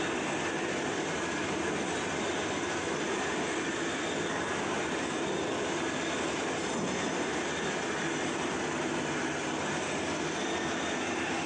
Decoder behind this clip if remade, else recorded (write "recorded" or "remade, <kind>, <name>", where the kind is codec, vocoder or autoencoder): recorded